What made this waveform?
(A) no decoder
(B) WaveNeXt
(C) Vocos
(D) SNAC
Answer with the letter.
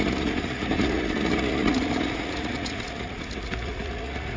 C